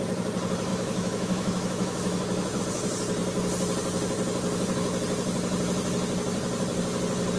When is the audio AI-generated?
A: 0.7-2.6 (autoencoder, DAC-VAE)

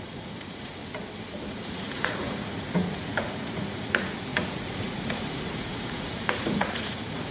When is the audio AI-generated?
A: 0.0-0.8 (vocoder, Vocos); 1.5-7.3

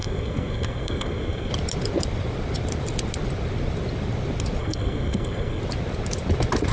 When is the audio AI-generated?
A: 0.0-1.5 (codec, SNAC); 4.6-5.6